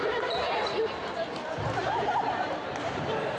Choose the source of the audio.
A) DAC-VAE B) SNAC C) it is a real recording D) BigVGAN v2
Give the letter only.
D